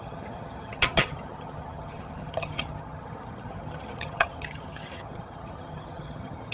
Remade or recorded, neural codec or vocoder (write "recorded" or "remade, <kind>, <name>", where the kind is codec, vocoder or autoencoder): remade, vocoder, HiFi-GAN